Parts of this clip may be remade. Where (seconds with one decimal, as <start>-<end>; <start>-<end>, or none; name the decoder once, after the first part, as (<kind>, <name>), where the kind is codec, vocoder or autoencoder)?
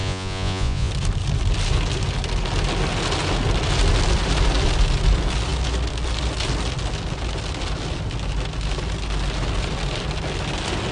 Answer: 0.0-0.9 (vocoder, Vocos)